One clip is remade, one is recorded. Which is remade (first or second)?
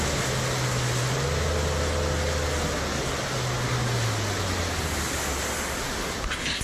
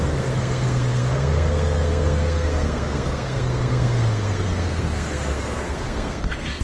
second